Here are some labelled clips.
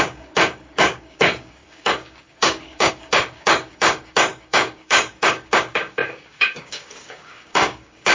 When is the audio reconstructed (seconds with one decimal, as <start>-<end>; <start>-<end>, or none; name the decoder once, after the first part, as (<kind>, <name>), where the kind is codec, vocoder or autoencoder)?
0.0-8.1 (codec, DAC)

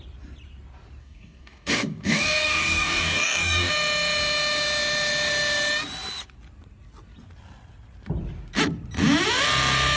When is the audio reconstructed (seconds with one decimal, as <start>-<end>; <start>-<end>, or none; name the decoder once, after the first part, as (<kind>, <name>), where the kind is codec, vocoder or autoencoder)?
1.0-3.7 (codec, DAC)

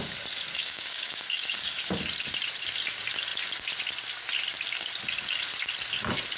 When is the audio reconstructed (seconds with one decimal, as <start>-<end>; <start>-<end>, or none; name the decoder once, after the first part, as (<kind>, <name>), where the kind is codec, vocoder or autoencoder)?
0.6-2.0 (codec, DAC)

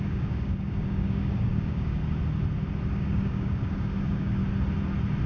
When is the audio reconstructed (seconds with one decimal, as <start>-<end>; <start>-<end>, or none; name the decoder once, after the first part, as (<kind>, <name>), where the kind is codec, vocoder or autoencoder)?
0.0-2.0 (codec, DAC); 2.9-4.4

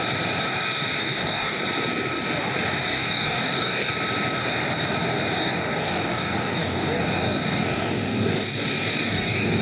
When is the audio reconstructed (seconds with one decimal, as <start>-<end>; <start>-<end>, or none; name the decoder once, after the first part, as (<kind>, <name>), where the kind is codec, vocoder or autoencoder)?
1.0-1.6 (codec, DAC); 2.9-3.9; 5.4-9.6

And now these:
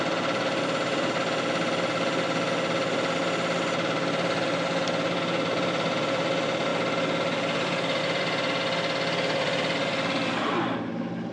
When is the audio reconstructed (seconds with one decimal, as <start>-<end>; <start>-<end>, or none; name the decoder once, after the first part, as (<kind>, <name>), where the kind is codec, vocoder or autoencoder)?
none

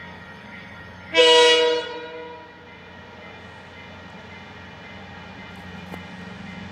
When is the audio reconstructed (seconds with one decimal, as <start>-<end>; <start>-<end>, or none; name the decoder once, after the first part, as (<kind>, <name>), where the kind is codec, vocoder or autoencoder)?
0.0-1.2 (codec, DAC)